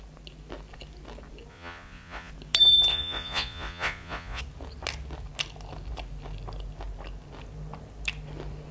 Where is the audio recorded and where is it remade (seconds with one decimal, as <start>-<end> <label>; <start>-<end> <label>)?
0.0-1.5 recorded; 1.5-2.3 remade; 2.3-2.9 recorded; 2.9-4.4 remade; 4.4-8.7 recorded